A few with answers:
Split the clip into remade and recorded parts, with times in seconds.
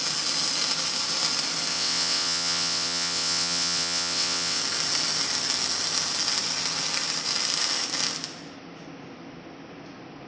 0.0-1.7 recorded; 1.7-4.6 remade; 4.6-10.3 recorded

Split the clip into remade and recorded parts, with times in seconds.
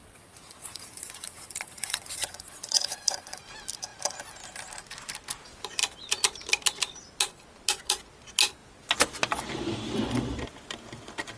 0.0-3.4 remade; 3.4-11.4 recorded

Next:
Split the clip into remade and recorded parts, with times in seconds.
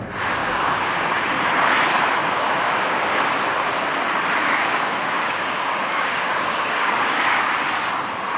0.0-0.4 recorded; 0.4-1.0 remade; 1.0-2.2 recorded; 2.2-3.2 remade; 3.2-4.4 recorded; 4.4-7.4 remade; 7.4-8.4 recorded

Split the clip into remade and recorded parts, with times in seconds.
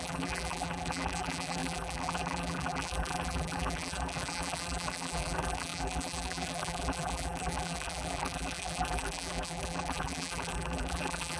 0.0-11.4 remade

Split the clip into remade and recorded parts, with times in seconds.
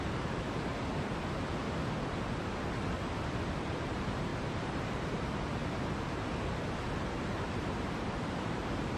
0.0-0.7 remade; 0.7-3.5 recorded; 3.5-5.6 remade; 5.6-7.2 recorded; 7.2-9.0 remade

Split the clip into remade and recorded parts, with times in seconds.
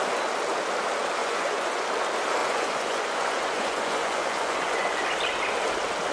0.0-1.2 recorded; 1.2-1.8 remade; 1.8-2.4 recorded; 2.4-5.0 remade; 5.0-6.1 recorded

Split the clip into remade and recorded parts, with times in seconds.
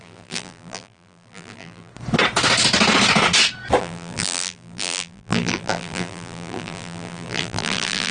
0.0-1.9 remade; 1.9-3.8 recorded; 3.8-8.1 remade